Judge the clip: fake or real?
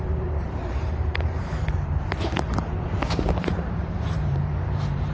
fake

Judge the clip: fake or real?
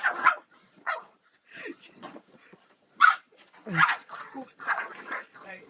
fake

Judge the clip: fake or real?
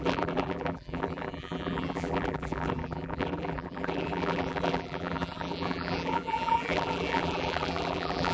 fake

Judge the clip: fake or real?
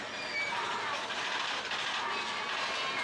real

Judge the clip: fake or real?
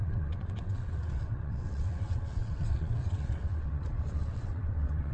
fake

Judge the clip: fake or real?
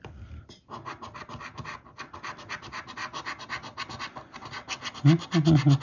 real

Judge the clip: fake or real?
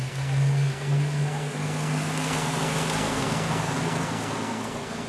fake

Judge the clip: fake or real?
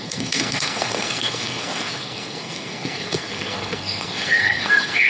fake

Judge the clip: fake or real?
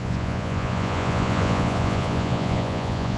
fake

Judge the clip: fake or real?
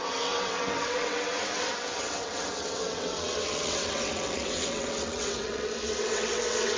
fake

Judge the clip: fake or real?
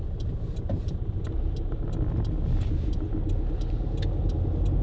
real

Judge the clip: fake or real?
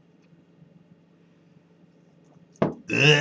real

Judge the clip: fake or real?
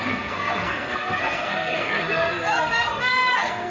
fake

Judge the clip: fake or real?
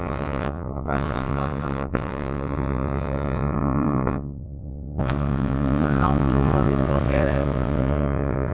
fake